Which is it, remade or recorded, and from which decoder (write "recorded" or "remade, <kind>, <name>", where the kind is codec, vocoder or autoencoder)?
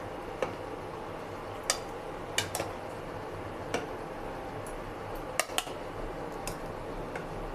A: recorded